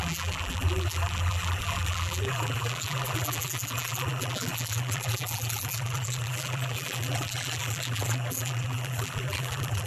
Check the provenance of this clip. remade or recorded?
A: remade